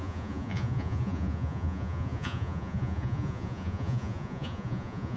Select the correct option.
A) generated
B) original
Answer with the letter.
A